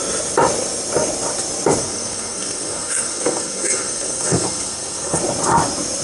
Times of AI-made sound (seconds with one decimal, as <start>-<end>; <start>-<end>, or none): 1.8-5.2